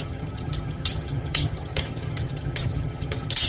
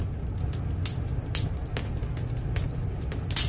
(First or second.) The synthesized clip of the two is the first